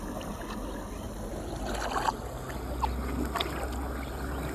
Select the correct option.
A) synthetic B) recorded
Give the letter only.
B